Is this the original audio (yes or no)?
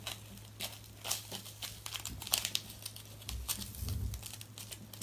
yes